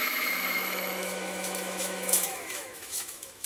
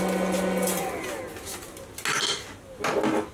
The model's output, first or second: first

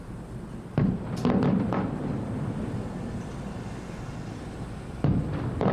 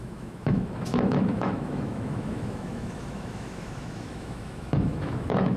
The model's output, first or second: second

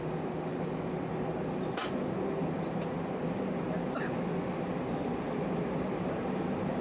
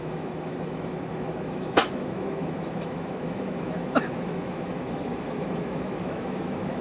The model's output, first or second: second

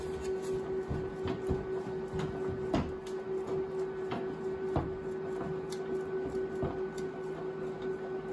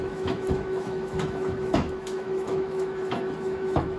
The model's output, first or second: second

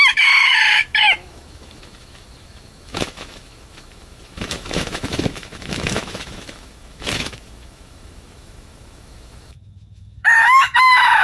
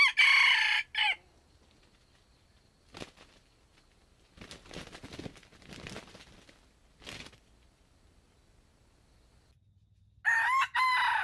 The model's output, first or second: first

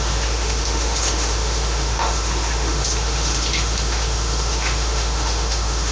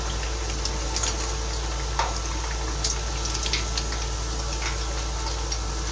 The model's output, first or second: first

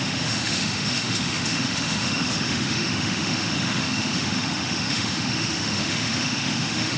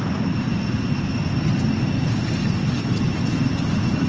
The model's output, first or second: first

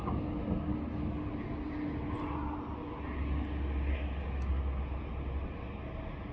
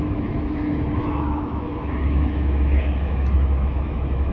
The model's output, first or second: second